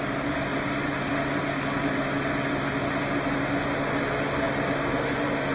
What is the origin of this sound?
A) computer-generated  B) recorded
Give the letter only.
B